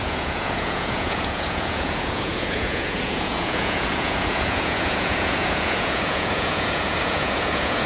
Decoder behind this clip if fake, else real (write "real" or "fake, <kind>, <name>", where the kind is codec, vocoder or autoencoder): fake, vocoder, Vocos